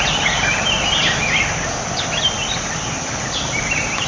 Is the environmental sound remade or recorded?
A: recorded